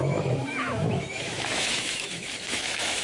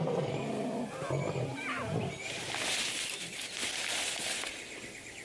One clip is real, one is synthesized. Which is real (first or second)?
second